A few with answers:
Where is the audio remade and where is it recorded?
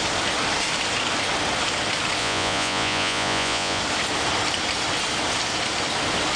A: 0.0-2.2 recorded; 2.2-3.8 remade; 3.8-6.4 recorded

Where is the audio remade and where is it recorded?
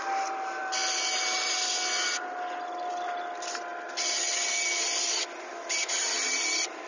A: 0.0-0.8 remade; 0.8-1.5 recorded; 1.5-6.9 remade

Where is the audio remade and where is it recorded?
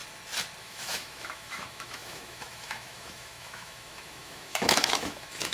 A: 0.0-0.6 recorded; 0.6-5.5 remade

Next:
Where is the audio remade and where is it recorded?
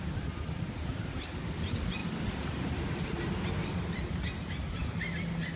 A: 0.0-2.0 recorded; 2.0-3.2 remade; 3.2-5.6 recorded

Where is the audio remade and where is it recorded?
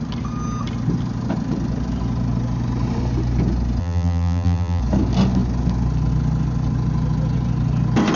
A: 0.0-3.8 recorded; 3.8-4.8 remade; 4.8-8.2 recorded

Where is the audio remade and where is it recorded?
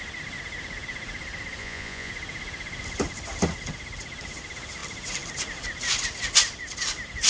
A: 0.0-1.6 recorded; 1.6-2.1 remade; 2.1-7.3 recorded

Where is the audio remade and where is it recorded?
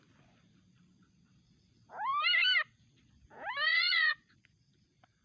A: 0.0-3.7 recorded; 3.7-4.3 remade; 4.3-5.2 recorded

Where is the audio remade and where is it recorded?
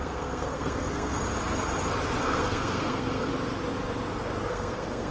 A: 0.0-1.2 remade; 1.2-2.2 recorded; 2.2-3.3 remade; 3.3-4.5 recorded; 4.5-5.1 remade